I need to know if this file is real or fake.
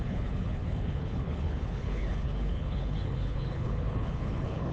fake